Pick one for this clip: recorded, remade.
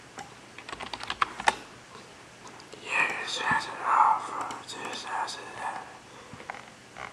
recorded